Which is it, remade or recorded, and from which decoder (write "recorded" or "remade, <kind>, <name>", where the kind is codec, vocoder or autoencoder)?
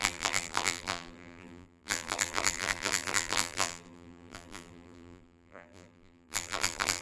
remade, vocoder, BigVGAN v2